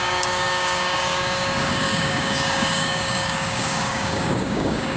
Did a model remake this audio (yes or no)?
yes